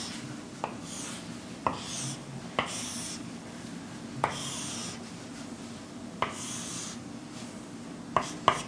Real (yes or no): yes